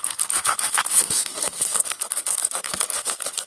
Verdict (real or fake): fake